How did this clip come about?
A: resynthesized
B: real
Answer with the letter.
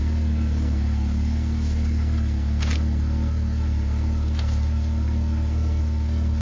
A